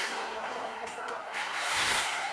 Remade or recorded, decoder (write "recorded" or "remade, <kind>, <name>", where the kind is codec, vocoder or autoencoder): remade, codec, SNAC